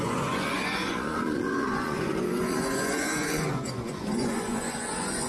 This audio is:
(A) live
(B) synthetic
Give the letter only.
B